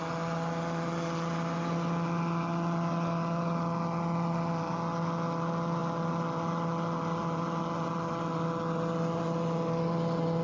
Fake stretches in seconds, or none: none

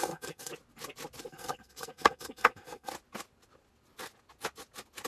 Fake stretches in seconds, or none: 0.0-0.5 (codec, SNAC); 1.2-2.9

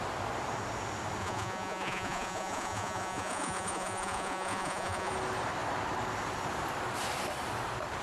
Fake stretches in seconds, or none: 1.2-5.1 (vocoder, Vocos)

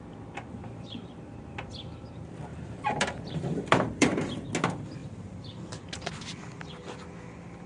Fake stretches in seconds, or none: 0.6-1.4 (vocoder, BigVGAN v2); 2.5-4.5